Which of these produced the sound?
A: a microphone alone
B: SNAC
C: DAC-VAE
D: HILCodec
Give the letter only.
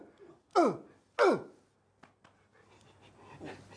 A